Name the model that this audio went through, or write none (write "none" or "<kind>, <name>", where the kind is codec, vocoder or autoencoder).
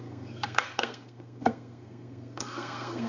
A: codec, SNAC